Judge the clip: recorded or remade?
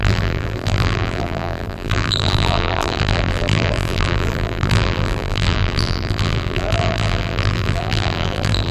remade